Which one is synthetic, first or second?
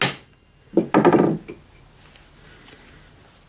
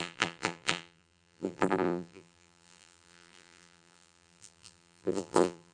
second